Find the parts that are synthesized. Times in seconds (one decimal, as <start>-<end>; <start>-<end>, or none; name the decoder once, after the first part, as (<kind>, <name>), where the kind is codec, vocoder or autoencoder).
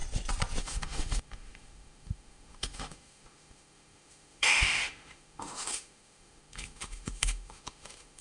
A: 0.6-8.2 (autoencoder, DAC-VAE)